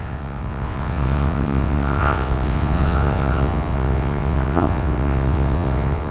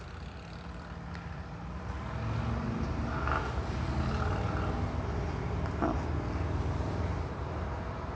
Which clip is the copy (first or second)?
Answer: first